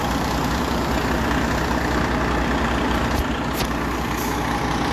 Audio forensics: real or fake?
real